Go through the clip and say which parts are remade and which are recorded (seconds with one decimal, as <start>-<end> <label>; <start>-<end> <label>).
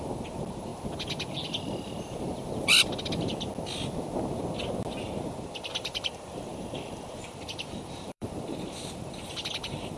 0.0-0.7 remade; 0.7-5.0 recorded; 5.0-6.5 remade; 6.5-7.0 recorded; 7.0-10.0 remade